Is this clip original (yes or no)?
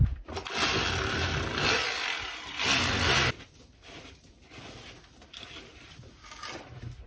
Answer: yes